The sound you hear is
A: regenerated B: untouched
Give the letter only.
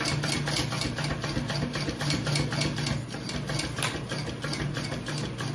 B